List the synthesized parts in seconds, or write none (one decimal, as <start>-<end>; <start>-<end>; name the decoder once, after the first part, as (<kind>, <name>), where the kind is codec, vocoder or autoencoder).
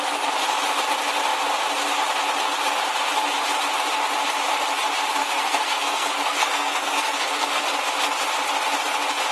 5.2-7.6 (codec, SNAC)